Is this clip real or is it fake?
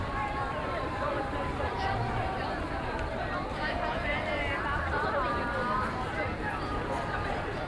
fake